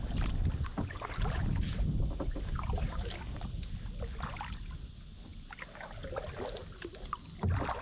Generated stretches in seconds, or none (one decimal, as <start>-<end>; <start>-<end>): none